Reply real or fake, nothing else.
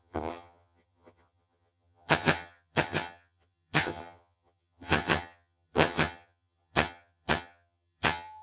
fake